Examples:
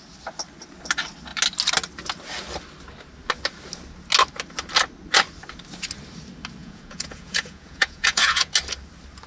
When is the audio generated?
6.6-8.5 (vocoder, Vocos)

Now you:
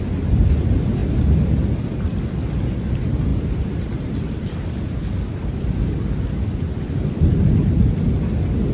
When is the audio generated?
1.0-2.5 (vocoder, BigVGAN v2); 3.3-8.2

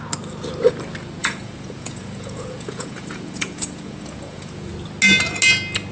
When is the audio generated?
1.2-4.7 (vocoder, Vocos)

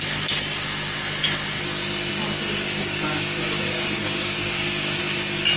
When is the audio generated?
2.1-5.0 (codec, DAC)

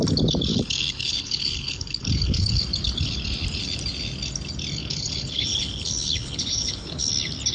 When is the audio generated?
0.5-2.6 (codec, HILCodec); 4.8-7.1

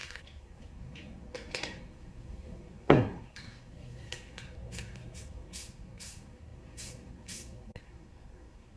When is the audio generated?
0.0-8.8 (codec, SNAC)